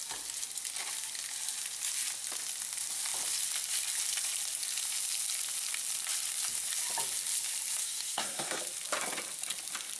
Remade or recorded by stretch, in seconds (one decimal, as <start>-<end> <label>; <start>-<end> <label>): 0.0-7.8 recorded; 7.8-8.6 remade; 8.6-10.0 recorded